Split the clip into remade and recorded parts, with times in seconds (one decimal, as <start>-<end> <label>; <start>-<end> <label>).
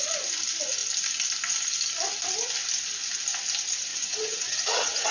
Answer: 0.0-3.9 recorded; 3.9-5.1 remade